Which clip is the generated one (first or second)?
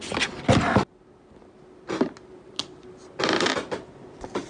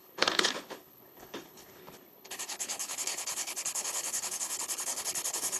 second